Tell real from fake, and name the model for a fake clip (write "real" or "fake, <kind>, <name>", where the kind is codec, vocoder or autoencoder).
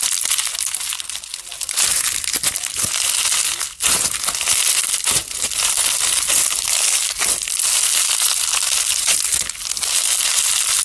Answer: real